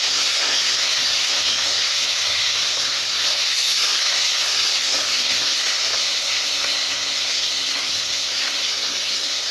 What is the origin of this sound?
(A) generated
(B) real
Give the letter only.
A